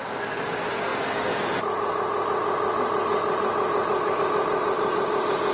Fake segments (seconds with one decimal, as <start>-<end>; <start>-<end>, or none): none